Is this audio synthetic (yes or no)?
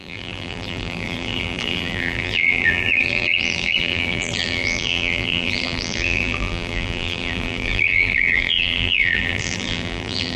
yes